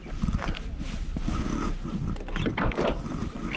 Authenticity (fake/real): real